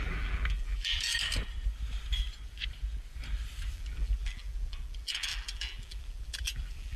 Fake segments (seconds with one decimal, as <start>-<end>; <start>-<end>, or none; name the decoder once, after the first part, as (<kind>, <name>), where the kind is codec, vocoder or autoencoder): 0.0-1.1 (vocoder, BigVGAN v2); 3.7-7.0